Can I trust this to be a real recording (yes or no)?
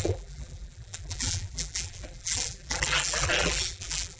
no